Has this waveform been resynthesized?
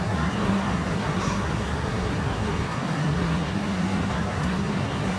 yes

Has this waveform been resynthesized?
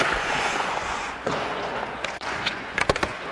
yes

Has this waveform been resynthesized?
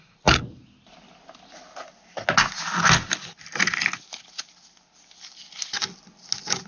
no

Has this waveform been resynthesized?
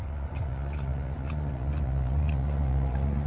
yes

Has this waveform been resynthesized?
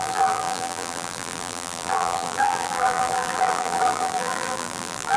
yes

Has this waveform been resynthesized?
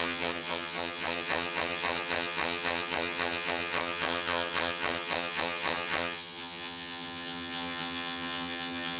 yes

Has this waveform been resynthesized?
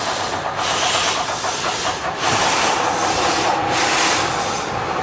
no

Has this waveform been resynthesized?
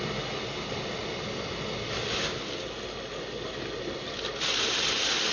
no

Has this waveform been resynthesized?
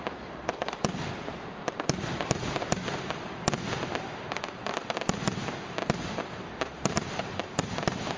yes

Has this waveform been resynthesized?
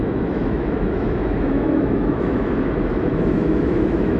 yes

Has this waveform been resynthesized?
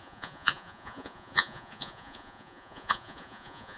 yes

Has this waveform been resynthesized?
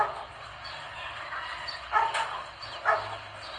no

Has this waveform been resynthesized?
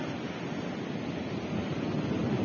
no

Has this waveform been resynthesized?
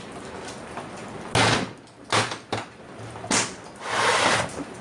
no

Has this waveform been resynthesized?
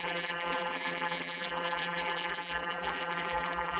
yes